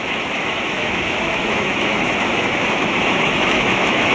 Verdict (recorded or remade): remade